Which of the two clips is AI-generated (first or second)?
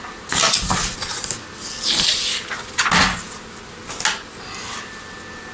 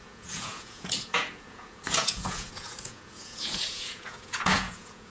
second